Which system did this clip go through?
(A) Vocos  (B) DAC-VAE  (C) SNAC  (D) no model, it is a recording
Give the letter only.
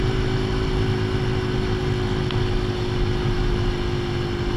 D